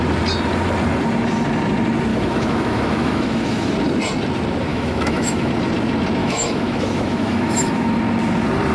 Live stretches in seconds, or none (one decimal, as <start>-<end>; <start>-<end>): 0.0-2.1; 3.7-4.7; 5.5-6.2; 7.9-8.7